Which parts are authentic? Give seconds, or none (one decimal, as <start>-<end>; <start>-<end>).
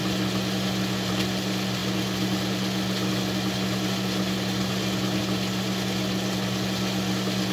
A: 0.0-7.5